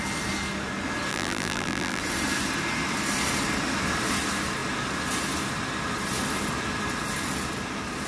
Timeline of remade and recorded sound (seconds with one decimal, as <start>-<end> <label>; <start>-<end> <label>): 0.0-1.1 recorded; 1.1-2.0 remade; 2.0-8.1 recorded